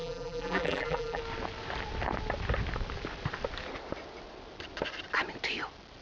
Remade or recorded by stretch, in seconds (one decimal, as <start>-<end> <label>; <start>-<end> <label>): 0.0-1.2 remade; 1.2-6.0 recorded